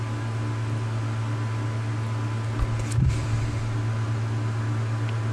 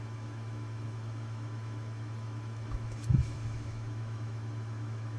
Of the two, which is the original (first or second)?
first